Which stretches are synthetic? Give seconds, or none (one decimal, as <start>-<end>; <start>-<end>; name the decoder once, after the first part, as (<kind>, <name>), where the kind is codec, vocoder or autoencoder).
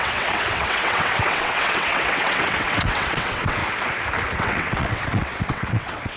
0.0-3.6 (vocoder, WaveNeXt); 4.3-6.2